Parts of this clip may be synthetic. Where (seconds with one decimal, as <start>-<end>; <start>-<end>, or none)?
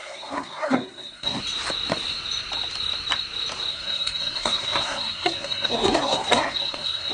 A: 0.0-1.4; 3.7-7.1